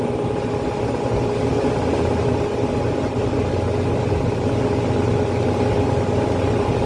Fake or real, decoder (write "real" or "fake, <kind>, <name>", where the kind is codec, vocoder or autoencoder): real